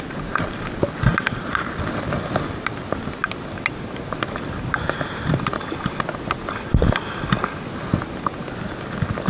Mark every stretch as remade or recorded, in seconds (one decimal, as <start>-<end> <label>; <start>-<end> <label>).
0.0-9.3 recorded